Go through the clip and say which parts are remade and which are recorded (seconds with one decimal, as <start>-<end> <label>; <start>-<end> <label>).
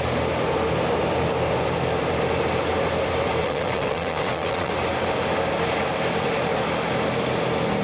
0.0-3.4 recorded; 3.4-4.7 remade; 4.7-7.8 recorded